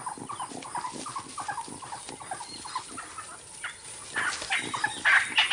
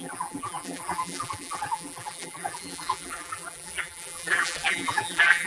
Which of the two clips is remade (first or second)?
second